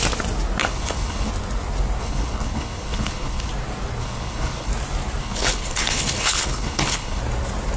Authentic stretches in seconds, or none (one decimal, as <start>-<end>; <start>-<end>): 0.0-0.6; 1.3-2.0; 3.5-4.0; 4.7-5.2; 7.2-7.8